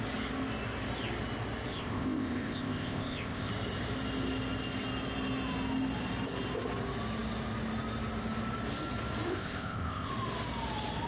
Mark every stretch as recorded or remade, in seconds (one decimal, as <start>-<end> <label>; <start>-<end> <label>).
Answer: 0.0-1.7 recorded; 1.7-3.5 remade; 3.5-9.3 recorded; 9.3-10.1 remade; 10.1-11.1 recorded